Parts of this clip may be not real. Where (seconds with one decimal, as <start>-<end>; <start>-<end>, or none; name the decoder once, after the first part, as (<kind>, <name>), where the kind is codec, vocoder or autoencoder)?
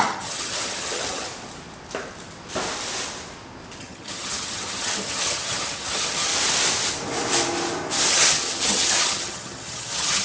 0.0-1.3 (vocoder, HiFi-GAN); 3.8-6.3; 8.1-10.2